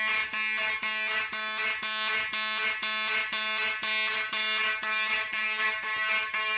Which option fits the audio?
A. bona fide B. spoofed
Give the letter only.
A